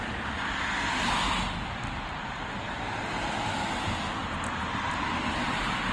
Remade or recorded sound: recorded